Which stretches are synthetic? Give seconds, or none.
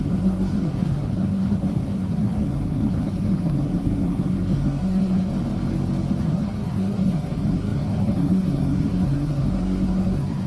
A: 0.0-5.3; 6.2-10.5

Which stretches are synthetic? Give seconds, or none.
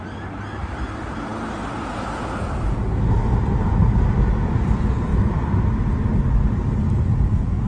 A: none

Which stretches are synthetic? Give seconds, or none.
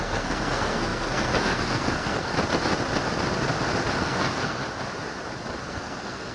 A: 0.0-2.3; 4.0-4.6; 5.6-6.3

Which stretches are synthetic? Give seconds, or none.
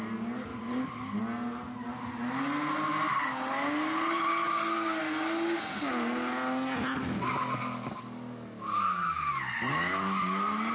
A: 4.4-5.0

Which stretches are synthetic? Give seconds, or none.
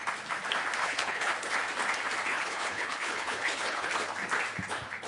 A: 0.8-1.3; 2.3-3.9